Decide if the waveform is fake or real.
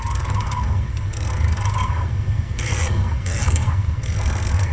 fake